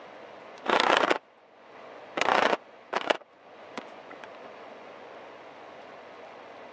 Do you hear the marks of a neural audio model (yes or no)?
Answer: yes